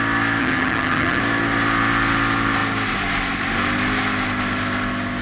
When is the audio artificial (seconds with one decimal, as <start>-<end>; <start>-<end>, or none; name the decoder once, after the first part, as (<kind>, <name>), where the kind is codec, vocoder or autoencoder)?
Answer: 0.4-1.2 (vocoder, HiFi-GAN)